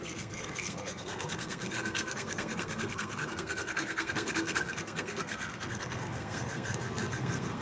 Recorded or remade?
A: remade